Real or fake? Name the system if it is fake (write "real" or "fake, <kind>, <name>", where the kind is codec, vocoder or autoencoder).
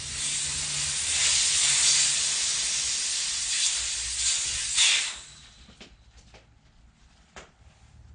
real